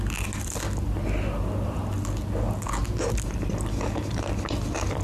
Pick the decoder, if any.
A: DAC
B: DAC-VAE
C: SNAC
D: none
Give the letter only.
D